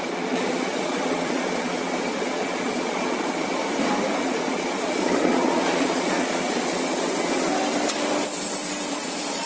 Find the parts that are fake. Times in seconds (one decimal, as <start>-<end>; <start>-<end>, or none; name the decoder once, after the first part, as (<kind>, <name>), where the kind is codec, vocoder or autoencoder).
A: 0.0-3.6 (vocoder, Vocos); 4.2-7.5; 8.9-9.5